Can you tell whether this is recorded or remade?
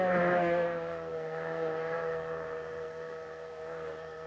remade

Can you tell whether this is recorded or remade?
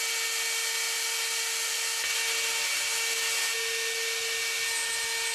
recorded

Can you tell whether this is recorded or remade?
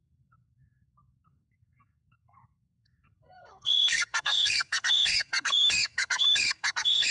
remade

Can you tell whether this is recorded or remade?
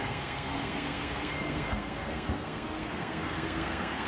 remade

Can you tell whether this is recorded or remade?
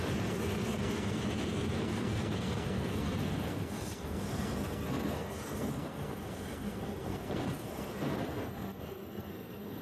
remade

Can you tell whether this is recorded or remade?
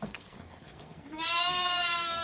remade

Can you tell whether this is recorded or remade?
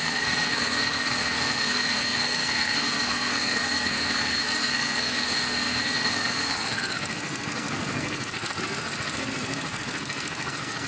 remade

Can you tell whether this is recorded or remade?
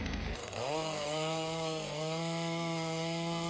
remade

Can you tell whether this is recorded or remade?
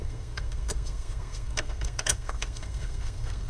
remade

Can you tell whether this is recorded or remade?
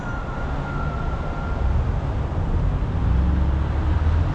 recorded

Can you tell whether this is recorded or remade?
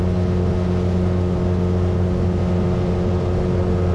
recorded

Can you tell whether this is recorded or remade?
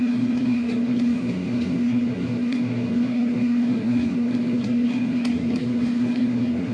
remade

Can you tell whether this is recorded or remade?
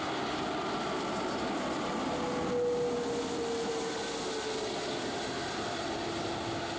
recorded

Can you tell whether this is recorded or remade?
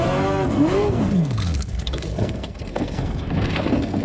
remade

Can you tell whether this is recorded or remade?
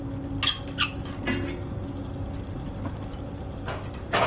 recorded